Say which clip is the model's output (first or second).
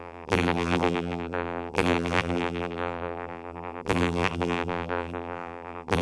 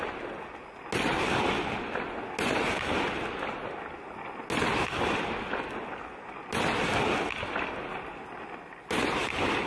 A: first